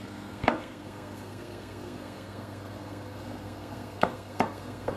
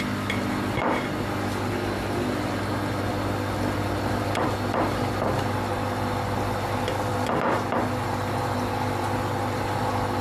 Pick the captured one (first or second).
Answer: second